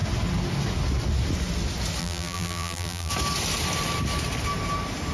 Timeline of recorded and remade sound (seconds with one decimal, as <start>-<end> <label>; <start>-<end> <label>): 0.0-2.0 recorded; 2.0-3.1 remade; 3.1-5.1 recorded